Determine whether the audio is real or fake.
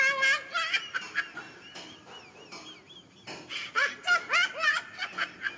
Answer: real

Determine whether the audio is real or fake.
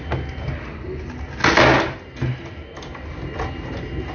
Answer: real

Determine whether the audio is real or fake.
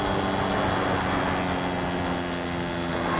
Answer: real